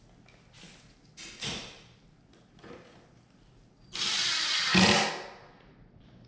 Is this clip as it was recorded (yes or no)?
yes